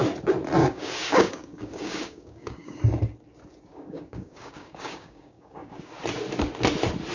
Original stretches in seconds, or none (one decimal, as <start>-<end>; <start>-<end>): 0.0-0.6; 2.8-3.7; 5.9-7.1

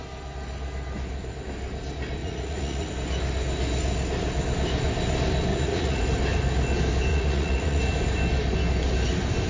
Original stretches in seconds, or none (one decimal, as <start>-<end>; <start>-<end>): 0.0-2.2; 2.9-5.5; 6.0-7.1; 7.8-9.5

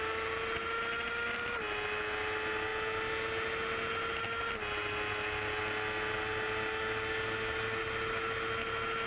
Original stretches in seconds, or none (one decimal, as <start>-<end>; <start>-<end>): 0.0-9.1

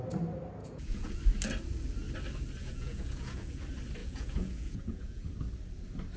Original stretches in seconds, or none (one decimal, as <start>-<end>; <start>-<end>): 0.0-0.6; 1.2-2.6; 3.6-4.0; 5.2-6.2

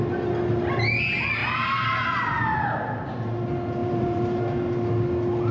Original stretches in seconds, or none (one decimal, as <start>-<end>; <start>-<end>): 0.0-1.4; 2.0-3.8; 4.4-5.5

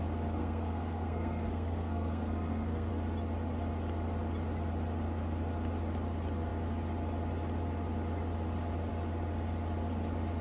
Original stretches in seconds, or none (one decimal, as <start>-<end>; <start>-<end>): 0.0-0.4; 2.9-10.4

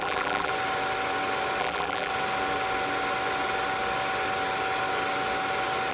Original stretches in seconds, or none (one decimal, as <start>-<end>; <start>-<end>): 0.5-1.6; 2.1-5.9